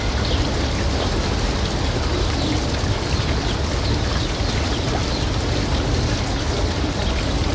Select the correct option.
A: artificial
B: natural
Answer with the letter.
B